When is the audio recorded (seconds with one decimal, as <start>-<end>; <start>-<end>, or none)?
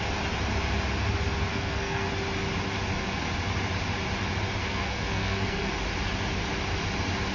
0.0-1.5; 2.1-4.6; 5.7-7.3